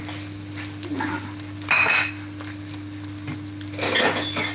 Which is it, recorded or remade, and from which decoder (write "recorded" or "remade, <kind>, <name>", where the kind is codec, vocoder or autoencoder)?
recorded